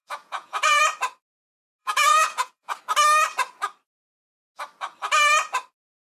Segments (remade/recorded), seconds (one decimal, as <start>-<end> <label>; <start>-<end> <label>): 0.0-0.8 remade; 0.8-1.8 recorded; 1.8-2.8 remade; 2.8-6.2 recorded